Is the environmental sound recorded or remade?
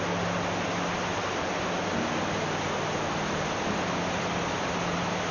recorded